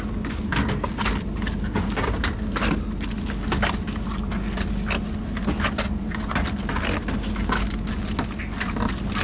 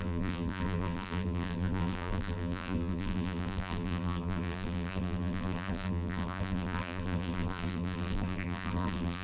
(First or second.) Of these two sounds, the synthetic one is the second